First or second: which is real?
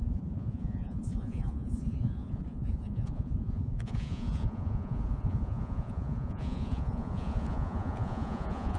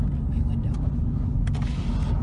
second